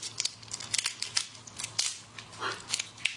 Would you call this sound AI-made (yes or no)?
no